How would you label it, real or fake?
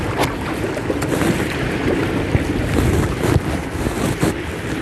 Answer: real